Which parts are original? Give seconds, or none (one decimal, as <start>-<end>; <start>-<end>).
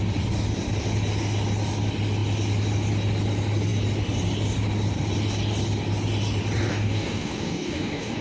0.0-6.7